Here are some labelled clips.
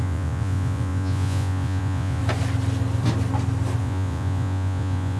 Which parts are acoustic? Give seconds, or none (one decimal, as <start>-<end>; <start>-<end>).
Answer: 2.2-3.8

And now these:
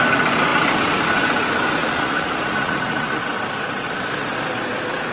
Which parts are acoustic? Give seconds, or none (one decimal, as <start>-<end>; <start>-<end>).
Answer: 0.0-1.8; 3.2-5.1

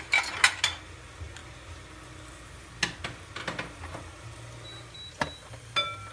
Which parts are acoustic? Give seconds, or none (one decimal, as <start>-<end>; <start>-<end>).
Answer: 0.0-6.1

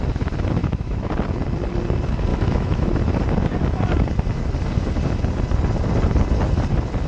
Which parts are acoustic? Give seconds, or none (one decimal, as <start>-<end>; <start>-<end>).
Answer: 0.0-0.6; 1.1-2.3; 3.0-7.1